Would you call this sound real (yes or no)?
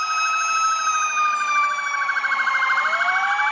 yes